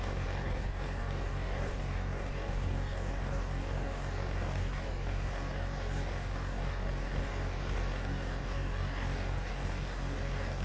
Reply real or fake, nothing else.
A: fake